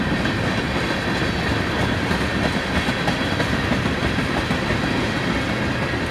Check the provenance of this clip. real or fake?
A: real